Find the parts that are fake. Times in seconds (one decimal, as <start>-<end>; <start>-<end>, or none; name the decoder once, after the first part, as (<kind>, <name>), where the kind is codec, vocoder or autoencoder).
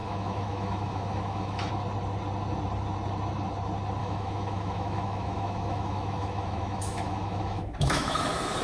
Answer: 0.0-1.7 (autoencoder, DAC-VAE); 4.0-8.6